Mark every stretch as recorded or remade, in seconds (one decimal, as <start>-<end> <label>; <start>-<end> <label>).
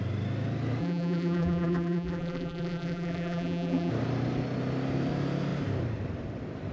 0.0-0.8 recorded; 0.8-3.9 remade; 3.9-6.7 recorded